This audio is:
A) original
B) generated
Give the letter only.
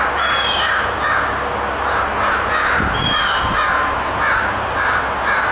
A